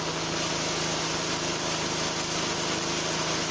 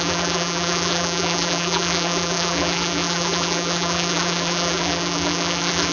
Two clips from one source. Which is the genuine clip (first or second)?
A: first